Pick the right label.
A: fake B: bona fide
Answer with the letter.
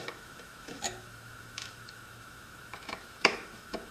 A